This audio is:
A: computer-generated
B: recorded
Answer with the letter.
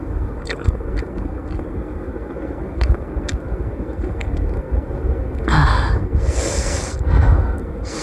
A